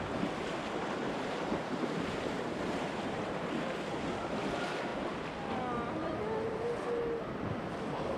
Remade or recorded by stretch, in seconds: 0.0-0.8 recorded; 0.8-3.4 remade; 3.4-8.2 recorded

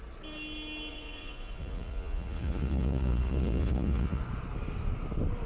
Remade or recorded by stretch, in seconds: 0.0-0.9 recorded; 0.9-4.2 remade; 4.2-5.5 recorded

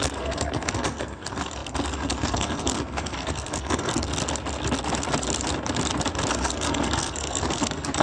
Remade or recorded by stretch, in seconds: 0.0-4.1 remade; 4.1-6.3 recorded; 6.3-8.0 remade

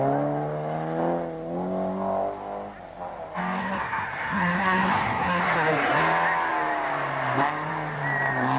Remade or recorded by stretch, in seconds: 0.0-3.6 recorded; 3.6-6.0 remade; 6.0-8.6 recorded